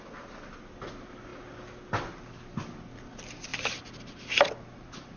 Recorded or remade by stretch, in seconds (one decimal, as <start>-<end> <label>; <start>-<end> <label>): 0.0-5.2 recorded